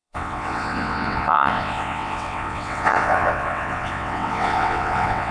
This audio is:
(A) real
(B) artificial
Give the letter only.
B